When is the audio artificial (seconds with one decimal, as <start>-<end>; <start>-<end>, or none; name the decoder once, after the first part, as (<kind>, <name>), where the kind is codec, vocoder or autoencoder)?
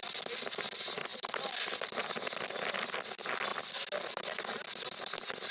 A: none